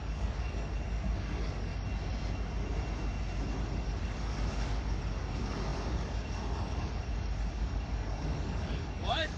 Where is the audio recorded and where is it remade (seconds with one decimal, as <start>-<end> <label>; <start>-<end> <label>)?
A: 0.0-1.7 remade; 1.7-3.6 recorded; 3.6-9.4 remade